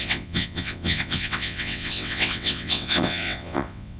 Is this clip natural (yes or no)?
no